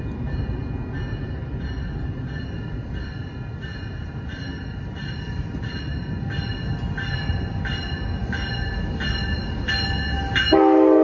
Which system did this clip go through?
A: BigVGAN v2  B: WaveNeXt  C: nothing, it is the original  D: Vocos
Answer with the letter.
C